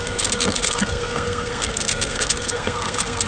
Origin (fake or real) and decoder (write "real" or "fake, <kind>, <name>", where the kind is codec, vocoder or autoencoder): fake, codec, SNAC